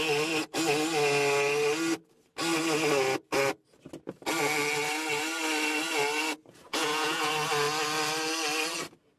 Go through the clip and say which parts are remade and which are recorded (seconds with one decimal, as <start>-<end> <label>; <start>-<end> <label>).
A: 0.0-6.7 recorded; 6.7-7.3 remade; 7.3-9.2 recorded